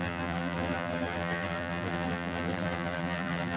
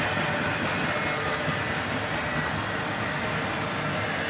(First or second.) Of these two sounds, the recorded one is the second